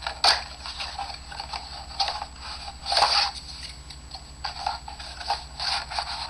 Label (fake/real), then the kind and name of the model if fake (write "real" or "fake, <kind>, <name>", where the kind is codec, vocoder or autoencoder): real